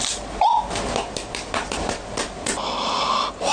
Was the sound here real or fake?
real